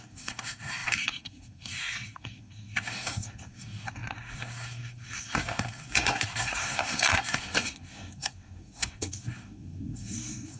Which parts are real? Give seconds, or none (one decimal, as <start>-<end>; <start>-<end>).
none